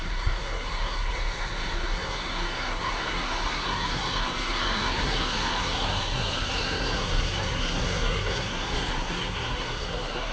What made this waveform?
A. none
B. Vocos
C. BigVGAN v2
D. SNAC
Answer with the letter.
D